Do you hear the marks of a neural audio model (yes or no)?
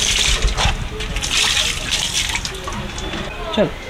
no